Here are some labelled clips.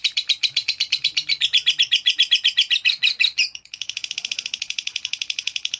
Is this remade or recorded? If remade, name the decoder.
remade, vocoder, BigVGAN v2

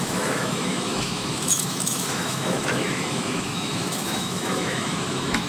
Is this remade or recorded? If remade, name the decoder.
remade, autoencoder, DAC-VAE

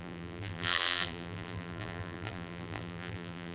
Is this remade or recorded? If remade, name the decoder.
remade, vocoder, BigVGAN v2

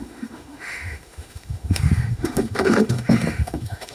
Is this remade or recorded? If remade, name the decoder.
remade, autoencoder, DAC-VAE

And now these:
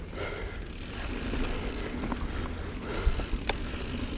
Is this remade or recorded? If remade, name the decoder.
remade, vocoder, BigVGAN v2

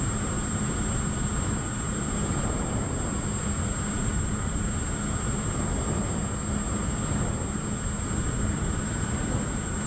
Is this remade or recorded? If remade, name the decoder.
recorded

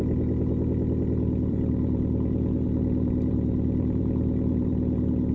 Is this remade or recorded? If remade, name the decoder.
remade, vocoder, BigVGAN v2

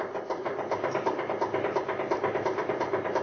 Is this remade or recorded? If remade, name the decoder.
recorded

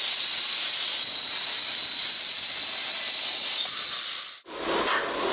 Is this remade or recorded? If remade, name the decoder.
recorded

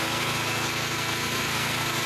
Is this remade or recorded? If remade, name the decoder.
remade, codec, SNAC